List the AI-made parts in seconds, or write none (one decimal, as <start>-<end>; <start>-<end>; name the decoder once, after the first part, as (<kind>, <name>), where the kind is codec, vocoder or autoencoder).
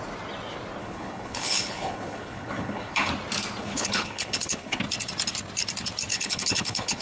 0.8-3.1 (codec, HILCodec); 3.6-4.8; 6.1-7.0